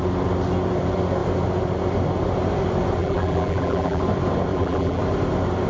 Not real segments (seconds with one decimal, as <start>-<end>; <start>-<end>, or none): 3.0-4.0; 4.5-5.0